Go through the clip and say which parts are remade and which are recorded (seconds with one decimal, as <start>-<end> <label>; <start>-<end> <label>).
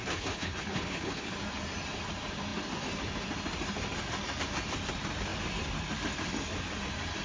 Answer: 0.0-1.3 remade; 1.3-7.2 recorded